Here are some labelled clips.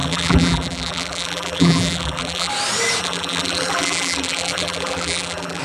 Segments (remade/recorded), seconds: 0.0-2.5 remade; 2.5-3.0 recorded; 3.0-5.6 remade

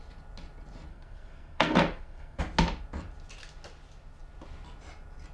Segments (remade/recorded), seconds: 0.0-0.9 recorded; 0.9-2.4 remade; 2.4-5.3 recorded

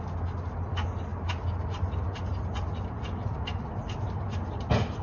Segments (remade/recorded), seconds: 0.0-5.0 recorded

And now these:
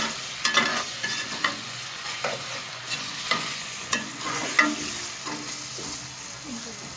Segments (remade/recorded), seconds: 0.0-0.7 recorded; 0.7-4.5 remade; 4.5-7.0 recorded